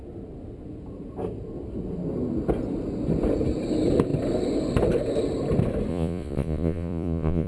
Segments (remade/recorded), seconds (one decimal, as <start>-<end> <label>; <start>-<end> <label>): 0.0-5.9 recorded; 5.9-7.5 remade